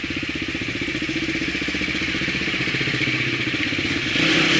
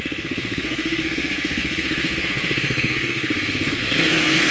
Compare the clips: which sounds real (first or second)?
first